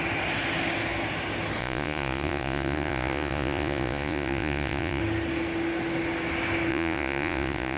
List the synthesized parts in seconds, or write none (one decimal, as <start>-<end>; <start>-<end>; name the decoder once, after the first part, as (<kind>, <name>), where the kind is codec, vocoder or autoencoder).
1.6-5.0 (vocoder, Vocos); 6.7-7.8